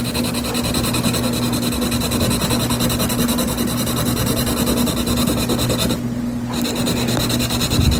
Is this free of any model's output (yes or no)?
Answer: yes